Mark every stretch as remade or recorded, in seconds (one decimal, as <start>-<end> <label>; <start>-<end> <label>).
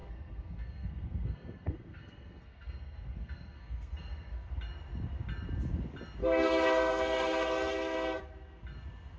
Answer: 0.0-4.5 remade; 4.5-6.2 recorded; 6.2-8.2 remade; 8.2-9.2 recorded